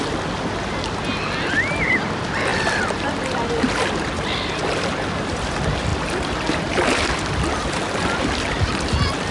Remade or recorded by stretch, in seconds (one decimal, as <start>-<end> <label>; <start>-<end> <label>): 0.0-9.3 recorded